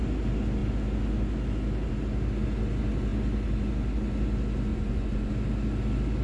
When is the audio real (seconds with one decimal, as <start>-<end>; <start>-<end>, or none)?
0.0-4.7; 5.3-6.2